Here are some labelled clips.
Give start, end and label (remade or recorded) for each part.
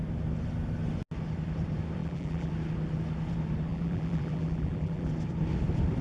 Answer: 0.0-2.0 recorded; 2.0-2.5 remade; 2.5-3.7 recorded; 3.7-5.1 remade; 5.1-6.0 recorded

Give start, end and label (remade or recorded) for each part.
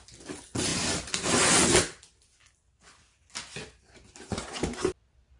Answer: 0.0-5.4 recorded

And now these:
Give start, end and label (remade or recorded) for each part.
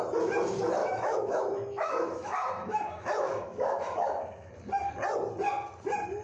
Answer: 0.0-0.8 recorded; 0.8-4.5 remade; 4.5-6.2 recorded